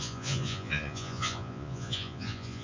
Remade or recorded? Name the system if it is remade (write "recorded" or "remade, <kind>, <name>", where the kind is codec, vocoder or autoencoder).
remade, vocoder, Vocos